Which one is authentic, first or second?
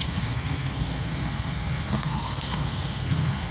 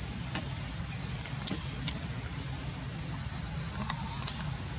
second